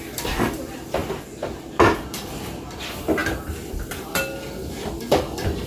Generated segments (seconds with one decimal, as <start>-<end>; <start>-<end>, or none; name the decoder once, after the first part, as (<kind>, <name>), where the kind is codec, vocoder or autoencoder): 0.0-1.0 (vocoder, BigVGAN v2); 1.7-5.7